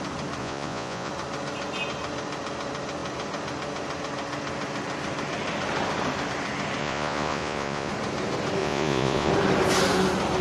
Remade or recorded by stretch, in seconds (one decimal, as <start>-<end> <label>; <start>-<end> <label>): 0.0-0.4 recorded; 0.4-1.1 remade; 1.1-6.8 recorded; 6.8-7.9 remade; 7.9-8.6 recorded; 8.6-9.3 remade; 9.3-10.4 recorded